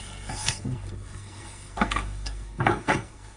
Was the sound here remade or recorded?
remade